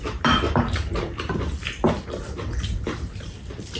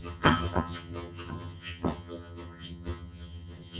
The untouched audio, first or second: first